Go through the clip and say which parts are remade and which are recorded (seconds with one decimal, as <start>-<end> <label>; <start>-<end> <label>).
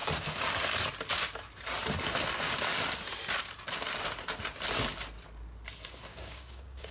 0.0-6.1 recorded; 6.1-6.9 remade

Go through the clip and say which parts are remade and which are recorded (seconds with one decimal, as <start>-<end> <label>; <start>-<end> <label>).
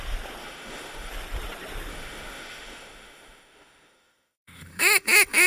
0.0-0.4 recorded; 0.4-1.1 remade; 1.1-1.9 recorded; 1.9-5.5 remade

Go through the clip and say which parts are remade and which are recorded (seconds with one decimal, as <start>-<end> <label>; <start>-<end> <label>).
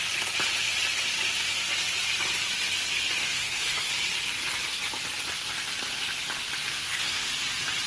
0.0-3.2 recorded; 3.2-3.9 remade; 3.9-6.7 recorded; 6.7-7.3 remade; 7.3-7.9 recorded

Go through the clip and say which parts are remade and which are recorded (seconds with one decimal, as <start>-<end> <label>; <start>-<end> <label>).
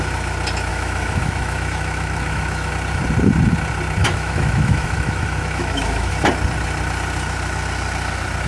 0.0-0.7 recorded; 0.7-2.7 remade; 2.7-4.0 recorded; 4.0-6.1 remade; 6.1-8.5 recorded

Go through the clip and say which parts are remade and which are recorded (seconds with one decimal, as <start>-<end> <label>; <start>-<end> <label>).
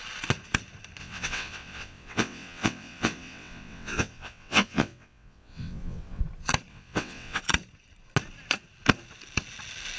0.0-1.0 recorded; 1.0-6.2 remade; 6.2-6.7 recorded; 6.7-7.4 remade; 7.4-10.0 recorded